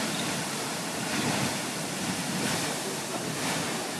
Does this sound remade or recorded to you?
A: remade